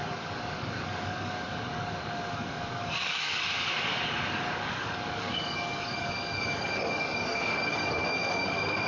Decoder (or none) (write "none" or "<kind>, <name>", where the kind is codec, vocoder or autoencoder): codec, DAC